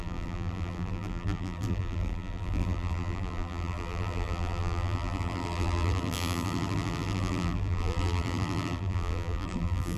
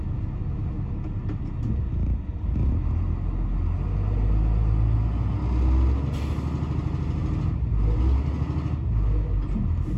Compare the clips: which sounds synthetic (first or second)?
first